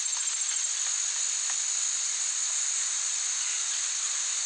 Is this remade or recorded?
recorded